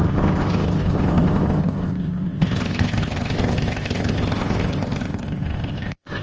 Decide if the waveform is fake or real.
fake